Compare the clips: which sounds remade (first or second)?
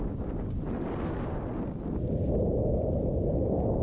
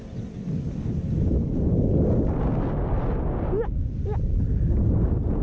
first